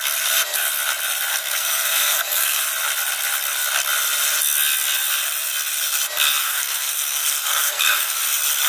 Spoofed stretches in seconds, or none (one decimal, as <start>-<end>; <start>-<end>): 1.3-2.6; 6.4-8.2